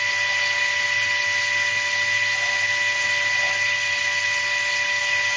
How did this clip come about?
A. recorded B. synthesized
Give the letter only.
A